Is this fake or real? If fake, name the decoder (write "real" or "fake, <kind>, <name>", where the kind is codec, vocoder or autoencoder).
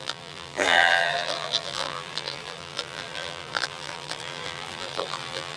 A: fake, vocoder, BigVGAN v2